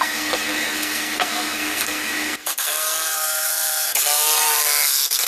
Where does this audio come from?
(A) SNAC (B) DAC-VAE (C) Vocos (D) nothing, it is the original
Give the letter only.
A